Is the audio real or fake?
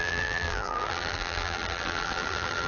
fake